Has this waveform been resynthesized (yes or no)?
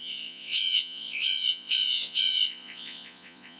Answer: yes